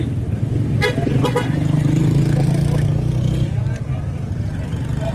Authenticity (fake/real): real